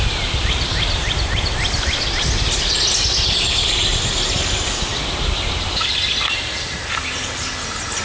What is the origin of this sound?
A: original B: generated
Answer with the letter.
A